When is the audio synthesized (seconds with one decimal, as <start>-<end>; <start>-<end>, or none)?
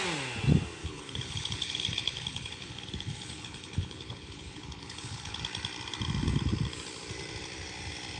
0.8-5.4